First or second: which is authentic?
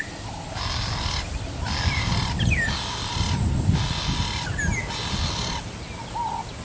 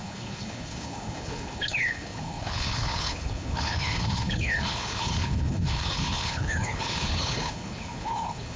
first